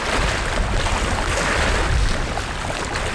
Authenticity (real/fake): real